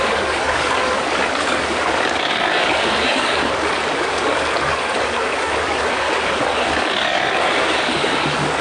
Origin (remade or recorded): remade